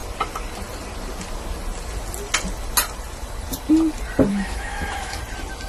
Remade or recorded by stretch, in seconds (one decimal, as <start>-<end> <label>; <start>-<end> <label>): 0.0-4.3 recorded; 4.3-5.2 remade; 5.2-5.7 recorded